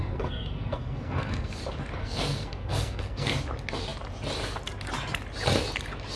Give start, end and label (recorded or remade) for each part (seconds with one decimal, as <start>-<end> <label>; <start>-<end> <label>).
0.0-1.6 remade; 1.6-2.0 recorded; 2.0-3.3 remade; 3.3-6.2 recorded